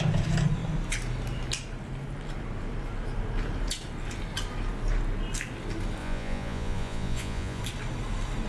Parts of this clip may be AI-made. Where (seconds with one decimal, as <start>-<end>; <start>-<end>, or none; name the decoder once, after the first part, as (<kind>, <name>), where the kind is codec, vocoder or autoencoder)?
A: 6.0-7.6 (vocoder, Vocos)